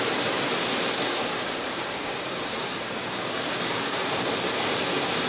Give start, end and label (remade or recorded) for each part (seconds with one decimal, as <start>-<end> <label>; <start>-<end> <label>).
0.0-1.1 recorded; 1.1-4.3 remade; 4.3-5.3 recorded